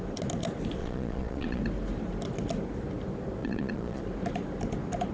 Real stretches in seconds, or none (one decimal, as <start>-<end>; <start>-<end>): 0.0-0.8; 1.6-3.4; 4.0-5.1